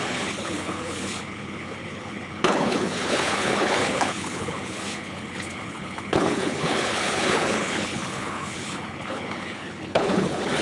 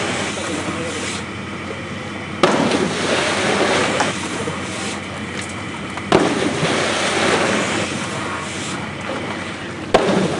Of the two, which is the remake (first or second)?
first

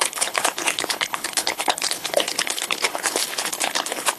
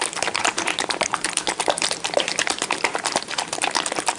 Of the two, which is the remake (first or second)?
first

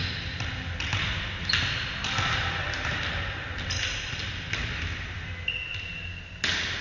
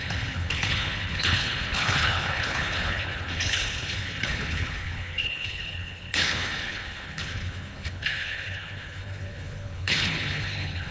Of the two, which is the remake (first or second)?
second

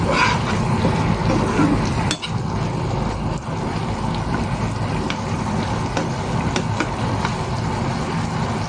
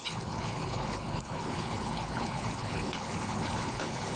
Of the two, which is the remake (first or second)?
second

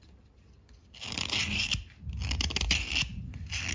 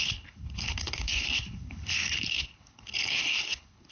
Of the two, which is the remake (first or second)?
second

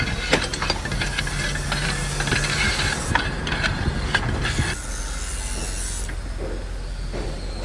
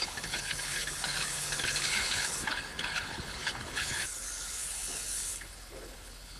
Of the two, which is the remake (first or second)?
second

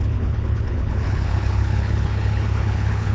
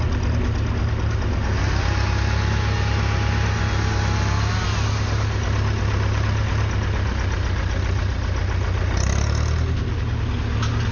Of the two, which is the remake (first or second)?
first